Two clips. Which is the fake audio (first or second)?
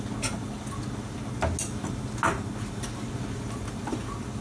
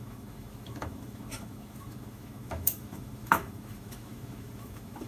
second